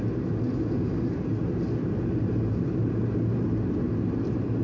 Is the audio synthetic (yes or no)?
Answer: no